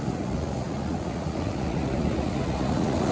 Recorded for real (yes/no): no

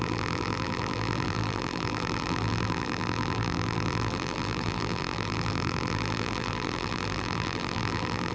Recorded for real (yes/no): no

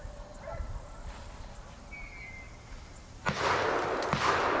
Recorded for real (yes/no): yes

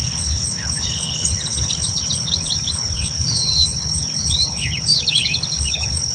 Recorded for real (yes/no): no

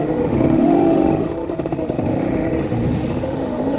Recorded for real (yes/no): no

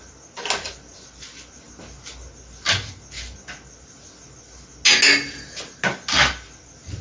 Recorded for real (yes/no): yes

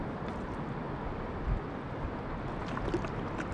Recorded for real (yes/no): yes